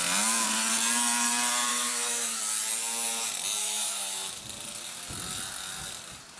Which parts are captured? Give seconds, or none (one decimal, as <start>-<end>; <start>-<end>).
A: 0.0-1.7; 2.4-3.6; 4.4-6.4